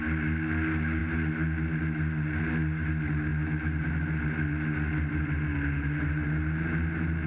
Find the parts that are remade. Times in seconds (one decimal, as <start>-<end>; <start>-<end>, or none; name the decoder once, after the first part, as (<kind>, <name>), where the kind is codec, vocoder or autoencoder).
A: none